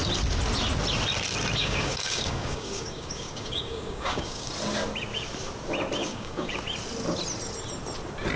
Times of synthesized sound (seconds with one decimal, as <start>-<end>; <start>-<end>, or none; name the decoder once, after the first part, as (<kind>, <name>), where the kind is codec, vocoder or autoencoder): 1.6-4.5 (codec, DAC); 6.0-6.5